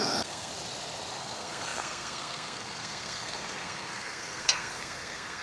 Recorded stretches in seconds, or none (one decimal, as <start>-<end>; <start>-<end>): 0.5-1.2